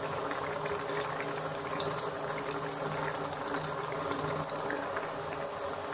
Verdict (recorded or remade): recorded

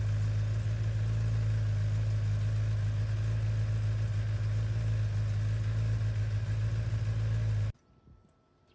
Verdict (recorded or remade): recorded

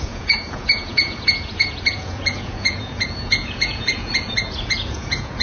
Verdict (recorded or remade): remade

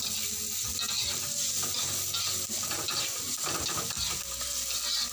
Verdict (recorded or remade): recorded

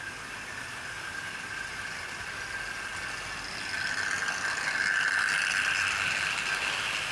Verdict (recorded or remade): recorded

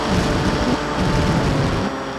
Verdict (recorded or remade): recorded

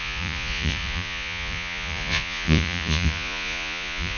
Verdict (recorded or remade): remade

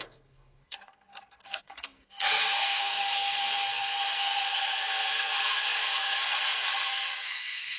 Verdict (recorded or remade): remade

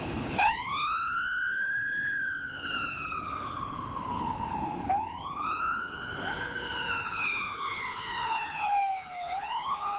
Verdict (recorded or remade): remade